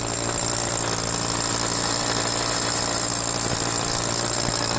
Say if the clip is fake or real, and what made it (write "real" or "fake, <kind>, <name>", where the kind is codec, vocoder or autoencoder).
real